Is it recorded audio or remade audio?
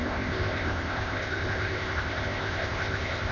remade